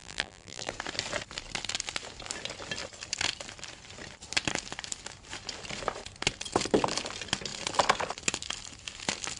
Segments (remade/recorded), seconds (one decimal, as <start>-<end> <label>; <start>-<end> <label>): 0.0-0.7 remade; 0.7-9.4 recorded

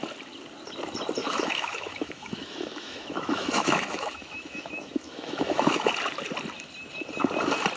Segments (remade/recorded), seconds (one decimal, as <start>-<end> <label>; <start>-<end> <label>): 0.0-1.2 recorded; 1.2-5.9 remade; 5.9-7.8 recorded